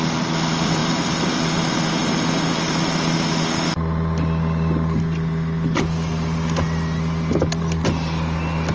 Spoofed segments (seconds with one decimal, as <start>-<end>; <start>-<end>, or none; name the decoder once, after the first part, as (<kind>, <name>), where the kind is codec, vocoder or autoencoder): none